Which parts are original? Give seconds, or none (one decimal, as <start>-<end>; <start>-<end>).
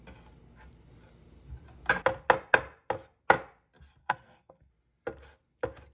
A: 0.0-4.0; 4.7-5.9